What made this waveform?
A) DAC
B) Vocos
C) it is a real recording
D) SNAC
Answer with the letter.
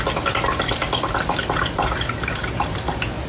C